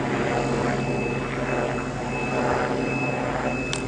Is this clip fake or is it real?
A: real